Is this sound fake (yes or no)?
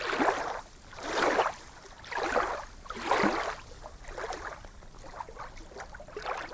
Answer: no